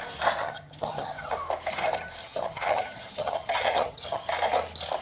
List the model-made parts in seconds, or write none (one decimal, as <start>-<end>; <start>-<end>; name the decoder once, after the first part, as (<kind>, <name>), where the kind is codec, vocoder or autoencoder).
0.4-1.3 (vocoder, HiFi-GAN); 2.2-4.3